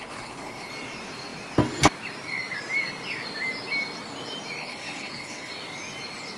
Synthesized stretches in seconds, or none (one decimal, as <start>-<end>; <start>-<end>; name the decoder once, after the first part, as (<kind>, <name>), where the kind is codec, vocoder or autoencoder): 0.0-0.7 (codec, HILCodec); 4.6-5.5